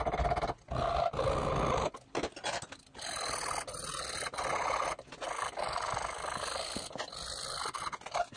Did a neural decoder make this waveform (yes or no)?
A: no